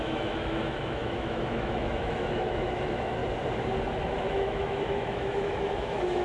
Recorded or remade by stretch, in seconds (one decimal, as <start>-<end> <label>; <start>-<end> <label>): 0.0-3.2 remade; 3.2-3.9 recorded; 3.9-6.2 remade